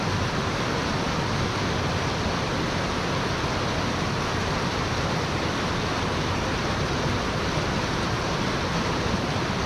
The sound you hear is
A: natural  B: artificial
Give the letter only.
A